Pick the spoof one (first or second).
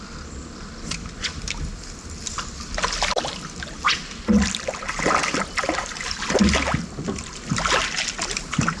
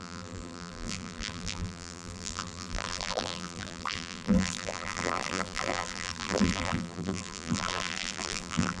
second